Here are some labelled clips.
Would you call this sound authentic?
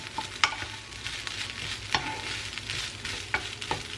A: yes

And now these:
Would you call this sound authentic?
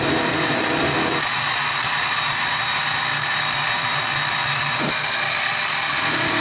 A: yes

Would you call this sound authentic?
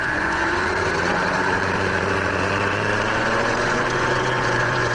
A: no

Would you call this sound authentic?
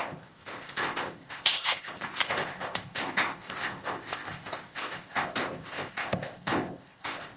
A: no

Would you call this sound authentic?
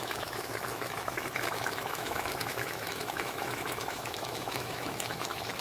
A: no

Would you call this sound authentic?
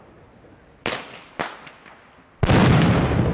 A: yes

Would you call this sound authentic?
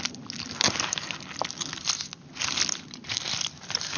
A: yes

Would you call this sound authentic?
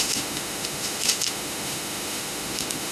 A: no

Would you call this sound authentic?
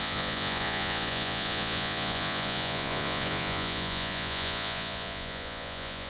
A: no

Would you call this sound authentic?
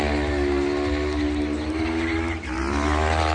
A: yes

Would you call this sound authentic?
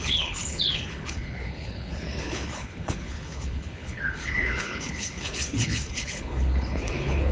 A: no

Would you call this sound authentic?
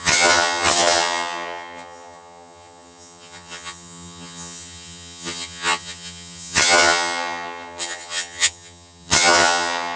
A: no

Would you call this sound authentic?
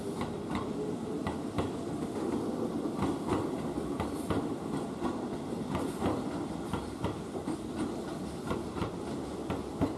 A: yes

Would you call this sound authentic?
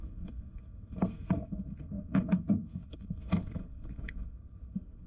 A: no